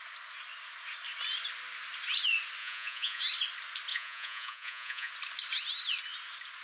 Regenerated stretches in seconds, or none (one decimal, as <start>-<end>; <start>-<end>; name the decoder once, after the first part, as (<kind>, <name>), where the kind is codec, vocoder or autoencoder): 2.6-3.2 (vocoder, Vocos); 3.9-5.1